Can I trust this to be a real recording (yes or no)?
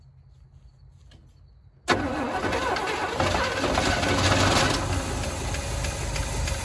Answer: yes